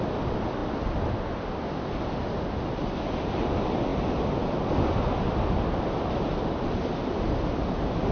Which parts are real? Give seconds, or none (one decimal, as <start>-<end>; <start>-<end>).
0.0-8.1